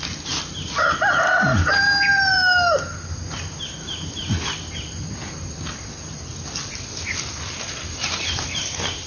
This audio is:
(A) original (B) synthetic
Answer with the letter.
A